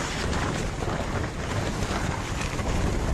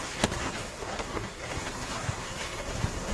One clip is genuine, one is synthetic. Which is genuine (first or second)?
first